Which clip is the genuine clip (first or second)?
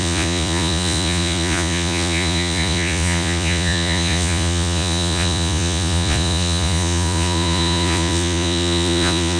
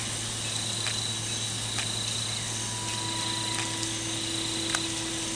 second